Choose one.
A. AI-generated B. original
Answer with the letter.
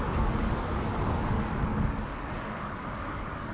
A